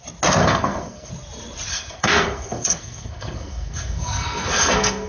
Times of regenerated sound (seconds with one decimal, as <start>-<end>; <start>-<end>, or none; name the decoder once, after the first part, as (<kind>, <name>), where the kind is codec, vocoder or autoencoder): 0.4-1.1 (codec, SNAC); 1.7-5.1